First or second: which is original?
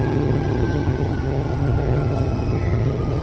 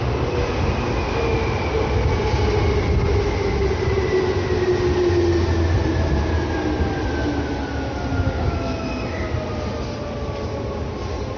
second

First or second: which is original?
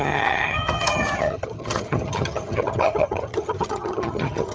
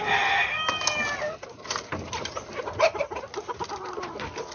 second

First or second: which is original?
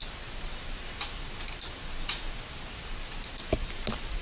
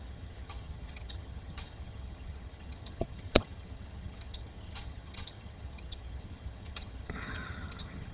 first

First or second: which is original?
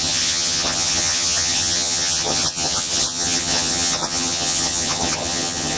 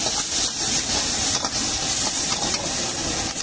second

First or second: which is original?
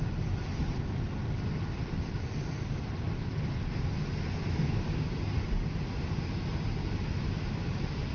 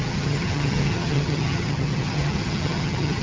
first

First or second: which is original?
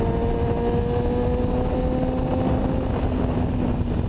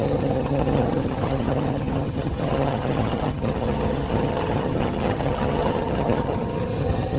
first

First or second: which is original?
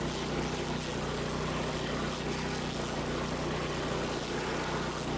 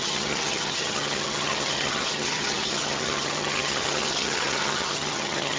first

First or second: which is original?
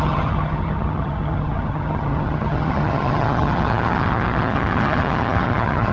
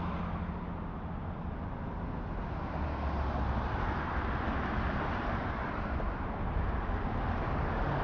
second